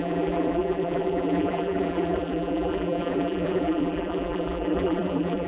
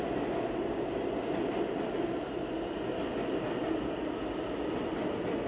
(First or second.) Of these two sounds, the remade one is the first